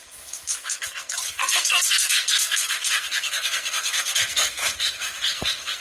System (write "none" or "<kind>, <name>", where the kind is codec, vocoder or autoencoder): codec, SNAC